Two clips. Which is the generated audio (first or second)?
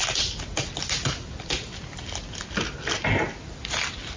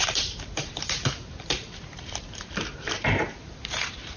second